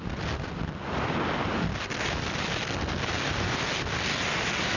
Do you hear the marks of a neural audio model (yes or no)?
no